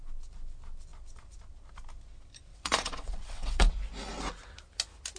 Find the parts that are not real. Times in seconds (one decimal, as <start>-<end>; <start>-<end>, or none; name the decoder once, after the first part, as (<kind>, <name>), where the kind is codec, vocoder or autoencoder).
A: 2.5-3.7 (vocoder, WaveNeXt)